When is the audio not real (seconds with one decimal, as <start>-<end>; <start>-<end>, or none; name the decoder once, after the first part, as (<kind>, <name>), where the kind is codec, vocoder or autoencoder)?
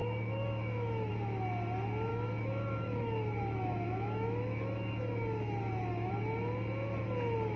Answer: 0.0-1.1 (autoencoder, DAC-VAE); 2.1-6.1